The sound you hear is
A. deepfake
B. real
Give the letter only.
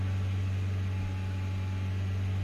B